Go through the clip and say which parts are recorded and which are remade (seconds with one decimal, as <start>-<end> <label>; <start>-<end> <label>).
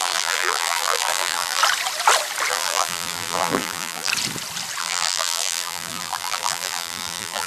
0.0-1.6 remade; 1.6-2.5 recorded; 2.5-4.1 remade; 4.1-4.8 recorded; 4.8-7.5 remade